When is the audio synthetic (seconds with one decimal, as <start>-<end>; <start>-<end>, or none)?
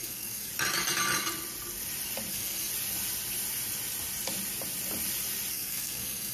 0.0-0.5; 2.3-2.7; 5.5-6.3